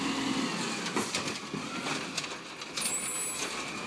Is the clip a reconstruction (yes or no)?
no